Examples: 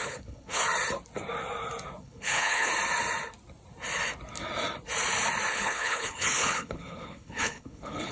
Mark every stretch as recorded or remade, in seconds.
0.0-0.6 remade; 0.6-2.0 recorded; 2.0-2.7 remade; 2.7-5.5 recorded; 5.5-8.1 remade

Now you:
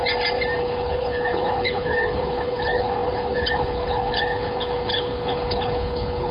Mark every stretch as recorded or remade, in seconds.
0.0-0.6 recorded; 0.6-6.3 remade

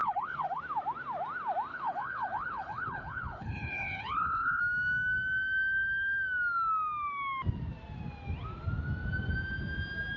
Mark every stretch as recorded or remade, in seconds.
0.0-0.6 remade; 0.6-1.7 recorded; 1.7-4.6 remade; 4.6-10.2 recorded

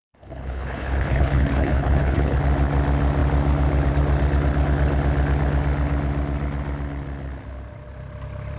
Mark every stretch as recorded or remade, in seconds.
0.0-2.4 remade; 2.4-8.6 recorded

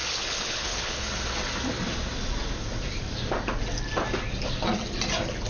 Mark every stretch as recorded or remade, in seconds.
0.0-1.0 remade; 1.0-5.5 recorded

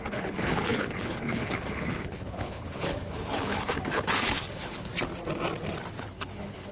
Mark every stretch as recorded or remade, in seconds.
0.0-4.9 remade; 4.9-6.0 recorded; 6.0-6.7 remade